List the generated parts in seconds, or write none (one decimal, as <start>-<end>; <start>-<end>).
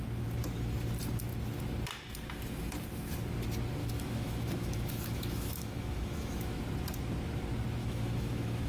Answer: 3.8-6.6; 7.8-8.7